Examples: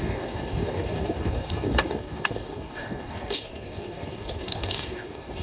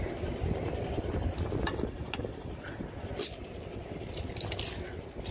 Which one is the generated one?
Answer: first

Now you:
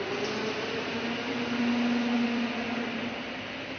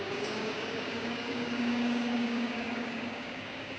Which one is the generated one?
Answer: second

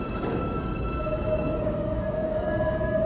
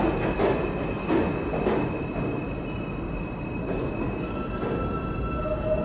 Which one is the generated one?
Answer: first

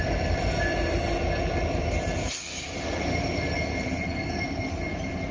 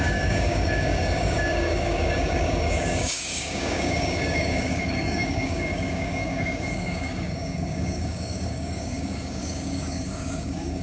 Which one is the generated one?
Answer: second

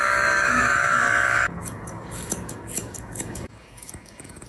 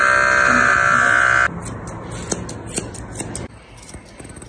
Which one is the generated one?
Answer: first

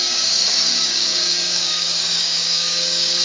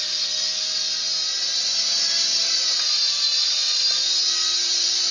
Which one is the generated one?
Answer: first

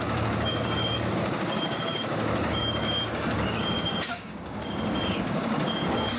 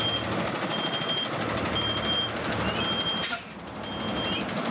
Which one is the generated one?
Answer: first